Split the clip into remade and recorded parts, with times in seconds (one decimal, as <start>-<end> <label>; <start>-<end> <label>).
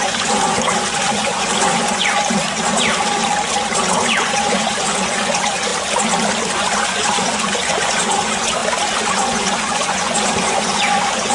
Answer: 0.0-2.2 remade; 2.2-3.9 recorded; 3.9-5.7 remade; 5.7-6.5 recorded; 6.5-8.6 remade; 8.6-9.1 recorded; 9.1-11.3 remade